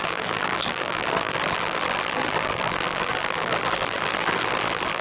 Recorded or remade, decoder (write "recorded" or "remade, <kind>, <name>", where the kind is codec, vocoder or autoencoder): remade, vocoder, BigVGAN v2